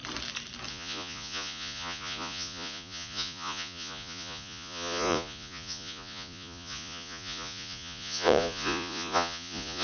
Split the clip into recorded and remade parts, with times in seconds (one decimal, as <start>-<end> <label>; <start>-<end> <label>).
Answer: 0.0-0.7 recorded; 0.7-9.8 remade